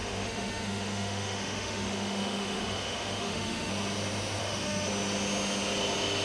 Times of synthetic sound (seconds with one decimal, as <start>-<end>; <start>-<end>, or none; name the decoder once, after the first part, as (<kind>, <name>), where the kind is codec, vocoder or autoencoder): 0.0-3.7 (autoencoder, DAC-VAE); 4.4-4.9